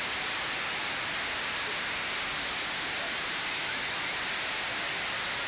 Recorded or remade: recorded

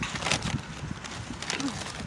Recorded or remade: recorded